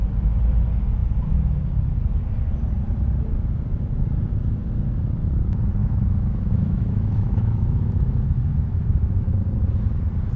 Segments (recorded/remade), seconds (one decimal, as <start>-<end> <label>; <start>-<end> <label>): 0.0-5.8 recorded; 5.8-9.3 remade; 9.3-10.4 recorded